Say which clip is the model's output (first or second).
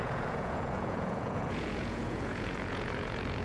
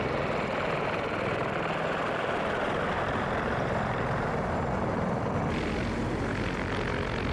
first